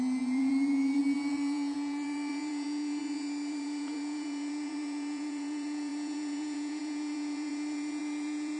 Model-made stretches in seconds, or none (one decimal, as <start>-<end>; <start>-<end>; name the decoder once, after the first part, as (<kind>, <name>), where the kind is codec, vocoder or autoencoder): 0.0-8.6 (vocoder, Vocos)